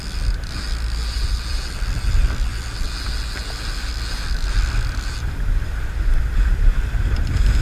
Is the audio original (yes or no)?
no